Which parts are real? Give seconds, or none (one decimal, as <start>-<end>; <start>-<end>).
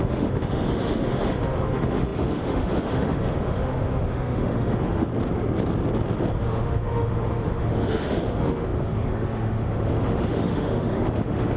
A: 5.1-6.4